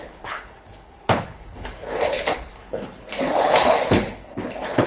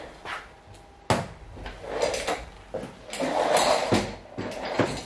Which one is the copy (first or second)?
first